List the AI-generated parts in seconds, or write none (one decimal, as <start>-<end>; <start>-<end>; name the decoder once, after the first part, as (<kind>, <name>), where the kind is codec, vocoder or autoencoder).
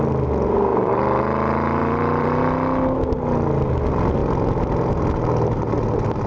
0.7-1.2 (vocoder, BigVGAN v2); 1.8-2.4